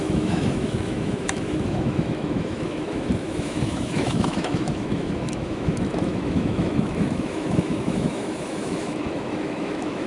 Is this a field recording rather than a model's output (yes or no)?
no